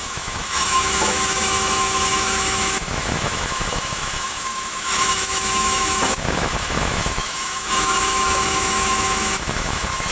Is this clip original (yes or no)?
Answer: no